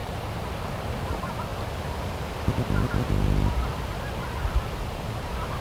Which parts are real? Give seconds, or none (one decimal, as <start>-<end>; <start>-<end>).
1.5-4.9